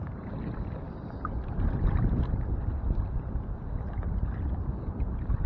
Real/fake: real